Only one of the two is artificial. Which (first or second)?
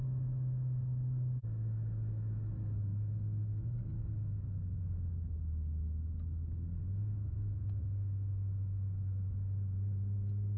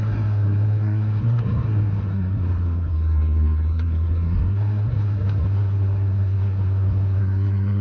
second